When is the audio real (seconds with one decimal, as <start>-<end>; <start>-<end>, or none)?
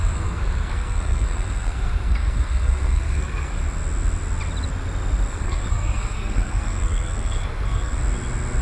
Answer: 3.6-5.3; 8.0-8.6